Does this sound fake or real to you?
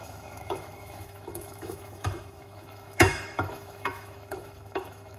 fake